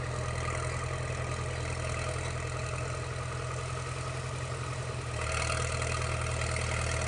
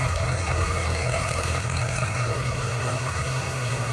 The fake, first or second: second